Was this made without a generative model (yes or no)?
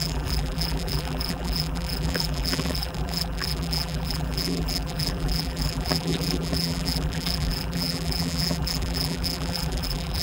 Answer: no